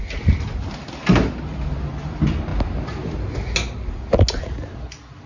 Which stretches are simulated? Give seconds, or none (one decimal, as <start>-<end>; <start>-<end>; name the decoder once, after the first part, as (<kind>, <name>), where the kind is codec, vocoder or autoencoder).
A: none